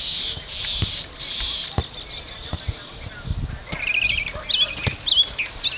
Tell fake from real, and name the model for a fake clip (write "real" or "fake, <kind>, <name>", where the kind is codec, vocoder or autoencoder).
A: real